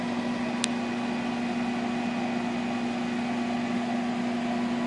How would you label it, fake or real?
real